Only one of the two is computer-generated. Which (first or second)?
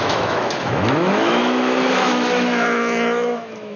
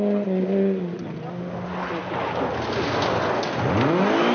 first